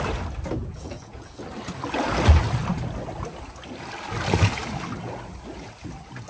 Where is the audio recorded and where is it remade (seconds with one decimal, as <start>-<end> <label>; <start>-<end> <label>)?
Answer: 0.0-0.6 recorded; 0.6-1.4 remade; 1.4-6.3 recorded